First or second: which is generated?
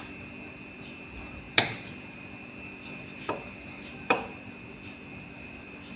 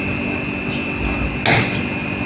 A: first